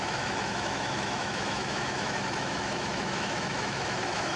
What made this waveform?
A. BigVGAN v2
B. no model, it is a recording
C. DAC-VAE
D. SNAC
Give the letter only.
C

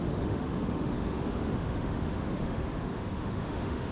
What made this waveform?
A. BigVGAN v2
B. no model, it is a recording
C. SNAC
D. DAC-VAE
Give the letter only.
D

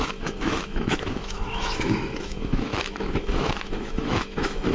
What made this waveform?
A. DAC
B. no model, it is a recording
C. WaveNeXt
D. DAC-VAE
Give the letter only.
D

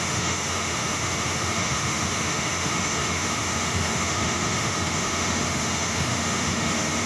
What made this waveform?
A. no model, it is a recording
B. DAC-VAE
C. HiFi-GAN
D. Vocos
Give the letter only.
B